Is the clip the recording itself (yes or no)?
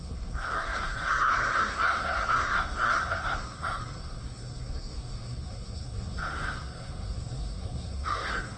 no